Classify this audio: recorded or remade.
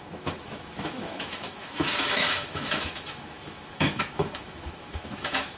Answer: remade